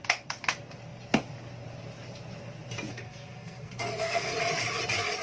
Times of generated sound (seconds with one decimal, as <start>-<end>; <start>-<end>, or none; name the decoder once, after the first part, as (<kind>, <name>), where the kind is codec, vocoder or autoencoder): 2.9-4.3 (codec, SNAC)